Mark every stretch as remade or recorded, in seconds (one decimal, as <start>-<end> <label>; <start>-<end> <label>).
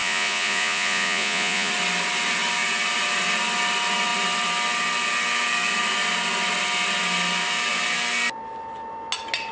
0.0-1.7 remade; 1.7-9.5 recorded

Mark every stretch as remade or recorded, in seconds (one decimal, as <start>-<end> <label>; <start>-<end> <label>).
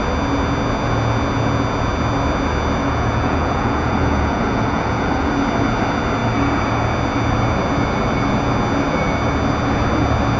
0.0-2.8 recorded; 2.8-5.3 remade; 5.3-10.4 recorded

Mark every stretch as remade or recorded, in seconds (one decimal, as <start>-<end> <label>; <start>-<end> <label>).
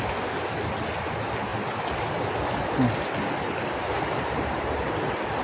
0.0-5.4 recorded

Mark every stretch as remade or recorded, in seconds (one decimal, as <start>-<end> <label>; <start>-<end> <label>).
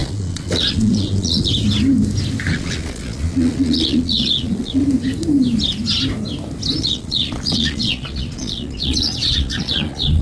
0.0-1.5 remade; 1.5-2.5 recorded; 2.5-4.8 remade; 4.8-6.8 recorded; 6.8-10.2 remade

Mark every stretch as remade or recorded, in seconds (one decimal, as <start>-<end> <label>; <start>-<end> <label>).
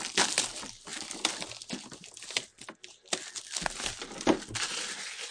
0.0-5.3 recorded